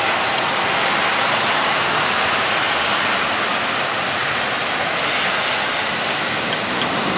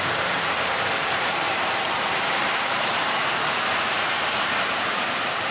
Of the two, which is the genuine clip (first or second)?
first